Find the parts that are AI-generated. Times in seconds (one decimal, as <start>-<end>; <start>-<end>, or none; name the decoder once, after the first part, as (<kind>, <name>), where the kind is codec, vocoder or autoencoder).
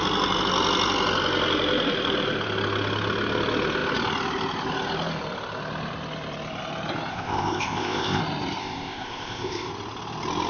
7.1-8.2 (codec, ZipCodec); 8.6-9.7